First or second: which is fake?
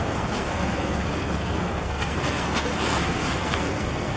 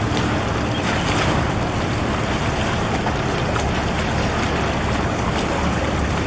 first